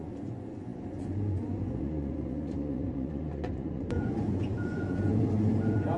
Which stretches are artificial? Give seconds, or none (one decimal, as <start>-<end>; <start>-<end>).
0.0-6.0